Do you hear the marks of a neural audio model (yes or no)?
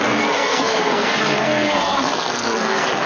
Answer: yes